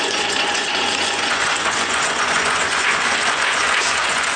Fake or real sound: fake